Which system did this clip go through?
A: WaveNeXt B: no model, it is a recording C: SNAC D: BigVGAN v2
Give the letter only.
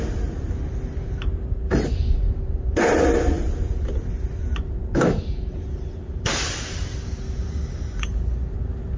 B